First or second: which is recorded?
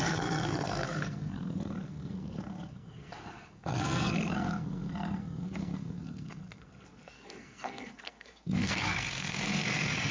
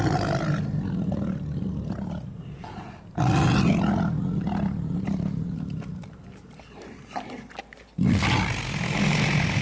second